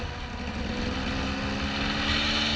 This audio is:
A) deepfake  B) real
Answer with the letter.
B